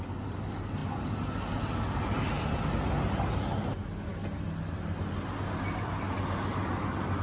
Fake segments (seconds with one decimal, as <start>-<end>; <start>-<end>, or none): none

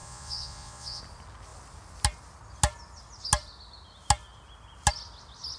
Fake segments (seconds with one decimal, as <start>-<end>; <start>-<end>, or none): 0.0-1.0

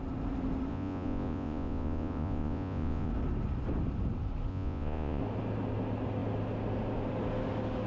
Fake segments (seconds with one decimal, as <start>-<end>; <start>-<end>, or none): 0.7-3.1; 4.5-5.2

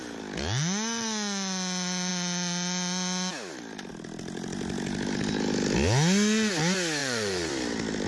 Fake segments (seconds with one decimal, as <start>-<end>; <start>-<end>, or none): 7.0-7.5

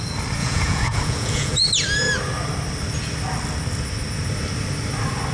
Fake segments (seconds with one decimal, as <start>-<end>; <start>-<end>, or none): 0.4-1.6

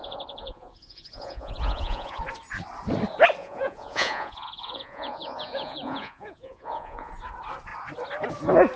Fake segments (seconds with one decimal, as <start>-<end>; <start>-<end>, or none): 0.0-2.2; 3.4-7.1